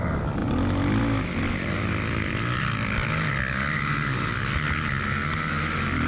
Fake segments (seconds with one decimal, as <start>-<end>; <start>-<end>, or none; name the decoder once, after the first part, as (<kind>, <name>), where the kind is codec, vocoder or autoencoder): none